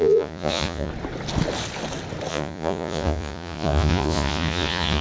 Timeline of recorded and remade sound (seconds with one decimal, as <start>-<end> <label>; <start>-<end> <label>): 0.0-0.9 remade; 0.9-2.3 recorded; 2.3-5.0 remade